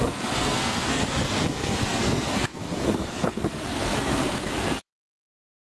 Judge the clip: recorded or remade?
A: remade